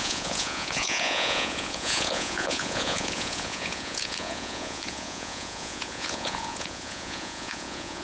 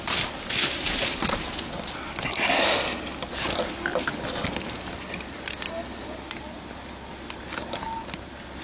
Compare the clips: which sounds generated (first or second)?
first